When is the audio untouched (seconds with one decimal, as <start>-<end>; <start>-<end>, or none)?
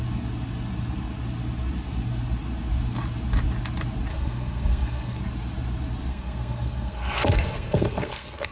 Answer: 0.0-4.1; 5.2-6.1